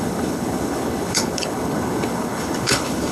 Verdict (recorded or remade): remade